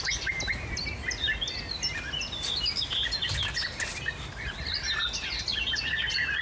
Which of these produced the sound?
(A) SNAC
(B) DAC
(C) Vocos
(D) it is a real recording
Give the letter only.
D